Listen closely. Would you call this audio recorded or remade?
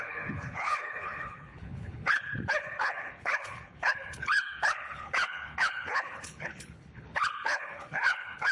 remade